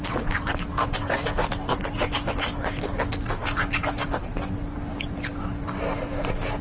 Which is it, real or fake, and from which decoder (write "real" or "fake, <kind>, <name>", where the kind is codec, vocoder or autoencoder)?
real